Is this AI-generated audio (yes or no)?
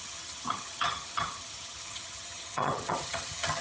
yes